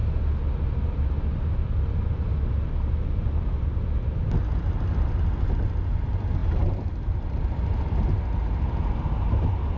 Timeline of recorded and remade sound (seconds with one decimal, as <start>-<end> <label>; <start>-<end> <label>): 0.0-9.8 recorded